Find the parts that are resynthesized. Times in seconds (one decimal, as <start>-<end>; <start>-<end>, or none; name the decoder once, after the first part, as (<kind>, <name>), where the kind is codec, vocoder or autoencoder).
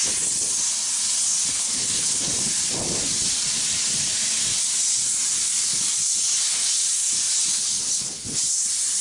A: 1.5-2.3 (codec, HILCodec); 7.5-8.5